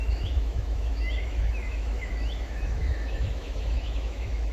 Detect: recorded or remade remade